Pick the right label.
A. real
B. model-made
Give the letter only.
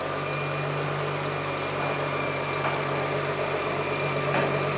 A